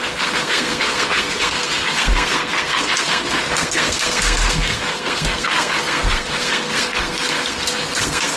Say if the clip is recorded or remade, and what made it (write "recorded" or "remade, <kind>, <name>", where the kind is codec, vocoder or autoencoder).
remade, codec, SNAC